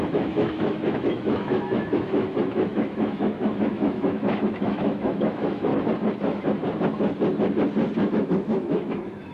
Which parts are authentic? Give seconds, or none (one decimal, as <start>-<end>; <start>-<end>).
5.7-8.1